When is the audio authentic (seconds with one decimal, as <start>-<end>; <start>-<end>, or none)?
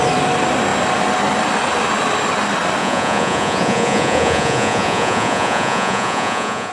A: 0.0-2.8